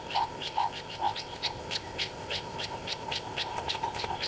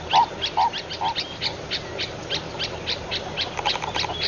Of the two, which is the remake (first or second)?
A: first